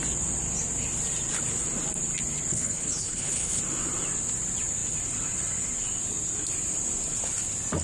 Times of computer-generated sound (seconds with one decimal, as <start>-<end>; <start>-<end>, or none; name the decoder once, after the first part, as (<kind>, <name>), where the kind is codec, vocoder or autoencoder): 2.5-3.6 (codec, HILCodec)